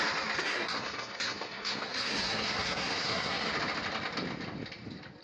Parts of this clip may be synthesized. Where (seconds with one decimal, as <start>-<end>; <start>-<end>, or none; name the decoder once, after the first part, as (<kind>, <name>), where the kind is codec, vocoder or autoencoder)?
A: 0.4-3.5 (codec, SNAC)